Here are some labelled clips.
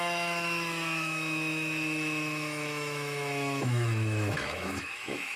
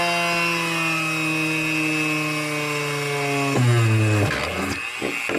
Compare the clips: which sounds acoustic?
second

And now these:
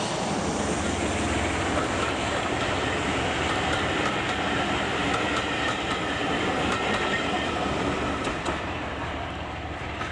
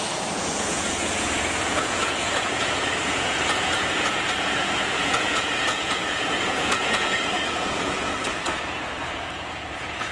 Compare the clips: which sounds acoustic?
first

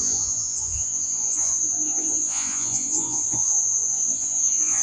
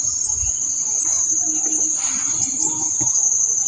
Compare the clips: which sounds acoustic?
second